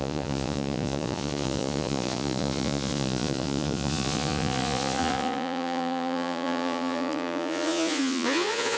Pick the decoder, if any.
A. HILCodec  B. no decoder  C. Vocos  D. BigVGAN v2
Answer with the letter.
C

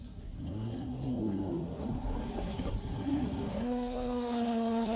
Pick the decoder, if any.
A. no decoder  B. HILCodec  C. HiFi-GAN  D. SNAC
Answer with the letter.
D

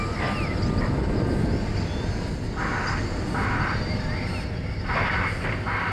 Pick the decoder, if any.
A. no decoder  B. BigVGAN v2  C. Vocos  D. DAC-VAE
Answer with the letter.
A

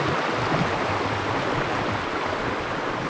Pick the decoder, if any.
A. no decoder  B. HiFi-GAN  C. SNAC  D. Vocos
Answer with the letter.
A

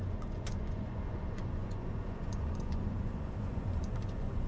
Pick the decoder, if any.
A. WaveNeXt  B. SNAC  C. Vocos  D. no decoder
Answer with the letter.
C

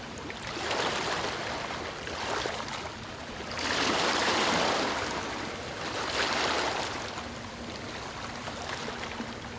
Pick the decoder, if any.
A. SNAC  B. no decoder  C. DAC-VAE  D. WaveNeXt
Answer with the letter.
B